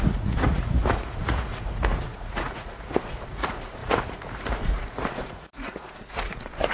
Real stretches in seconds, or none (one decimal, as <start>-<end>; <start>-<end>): none